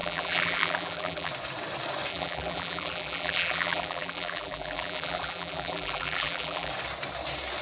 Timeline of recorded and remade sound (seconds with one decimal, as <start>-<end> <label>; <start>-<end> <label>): 0.0-1.3 remade; 1.3-2.1 recorded; 2.1-6.7 remade; 6.7-7.6 recorded